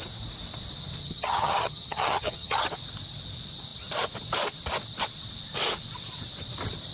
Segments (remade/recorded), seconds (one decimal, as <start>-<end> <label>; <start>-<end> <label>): 0.0-1.0 recorded; 1.0-2.7 remade; 2.7-6.9 recorded